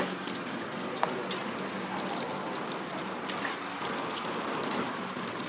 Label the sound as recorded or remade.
recorded